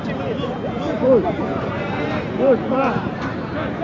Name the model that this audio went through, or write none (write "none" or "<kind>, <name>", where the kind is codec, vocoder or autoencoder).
none